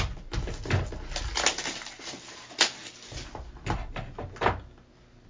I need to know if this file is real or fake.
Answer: real